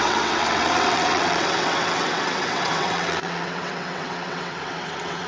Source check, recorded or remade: remade